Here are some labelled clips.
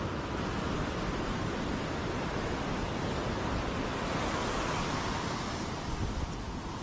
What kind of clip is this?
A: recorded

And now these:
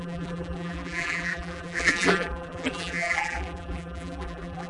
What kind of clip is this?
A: remade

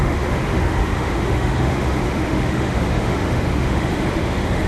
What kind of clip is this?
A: remade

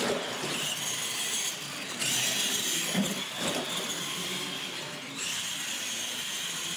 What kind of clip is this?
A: recorded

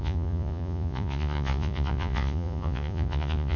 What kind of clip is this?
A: remade